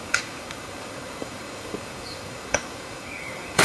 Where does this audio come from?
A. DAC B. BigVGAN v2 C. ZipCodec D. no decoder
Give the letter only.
A